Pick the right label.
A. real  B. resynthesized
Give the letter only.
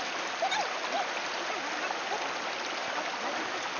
A